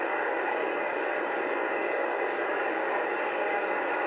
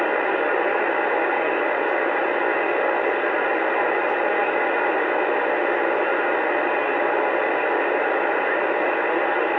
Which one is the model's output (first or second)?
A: first